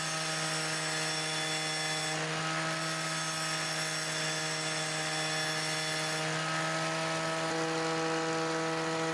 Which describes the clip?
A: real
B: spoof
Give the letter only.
A